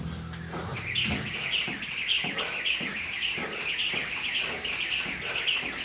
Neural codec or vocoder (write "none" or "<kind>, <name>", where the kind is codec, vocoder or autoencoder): none